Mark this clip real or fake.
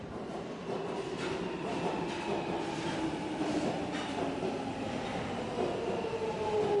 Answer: real